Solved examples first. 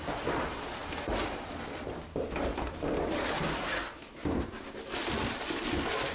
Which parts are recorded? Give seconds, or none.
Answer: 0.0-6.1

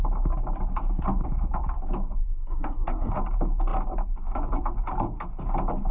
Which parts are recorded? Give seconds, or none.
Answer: 0.0-2.2; 3.1-5.9

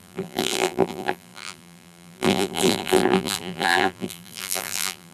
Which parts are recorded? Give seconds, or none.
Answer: none

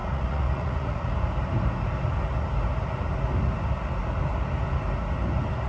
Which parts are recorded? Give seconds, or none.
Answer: 1.1-5.7

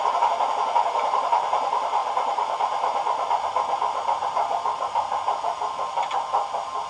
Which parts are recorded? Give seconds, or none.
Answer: 0.0-6.9

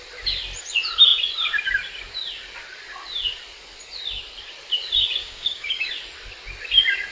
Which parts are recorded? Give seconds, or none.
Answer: 0.0-5.2; 5.9-7.1